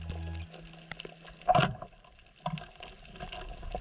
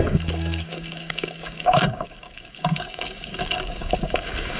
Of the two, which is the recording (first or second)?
first